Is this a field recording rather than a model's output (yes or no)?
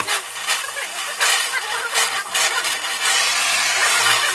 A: yes